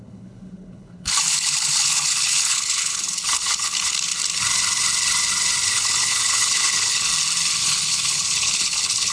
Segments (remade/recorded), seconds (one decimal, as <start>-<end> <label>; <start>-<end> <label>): 0.0-4.1 remade; 4.1-5.7 recorded; 5.7-7.1 remade; 7.1-7.6 recorded; 7.6-9.1 remade